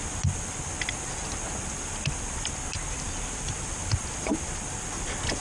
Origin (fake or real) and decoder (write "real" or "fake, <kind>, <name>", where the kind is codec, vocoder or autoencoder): real